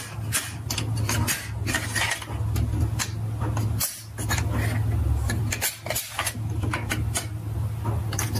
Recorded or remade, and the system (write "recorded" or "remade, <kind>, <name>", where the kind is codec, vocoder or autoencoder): recorded